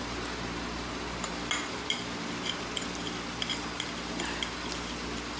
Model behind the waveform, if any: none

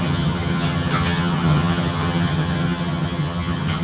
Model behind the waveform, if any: vocoder, HiFi-GAN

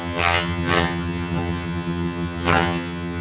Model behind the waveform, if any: vocoder, HiFi-GAN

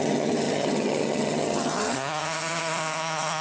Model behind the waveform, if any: vocoder, HiFi-GAN